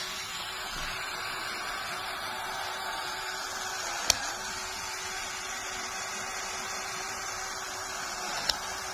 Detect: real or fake real